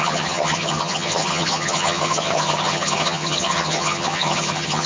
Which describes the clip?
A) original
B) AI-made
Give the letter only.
B